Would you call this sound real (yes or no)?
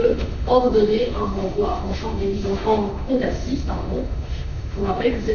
no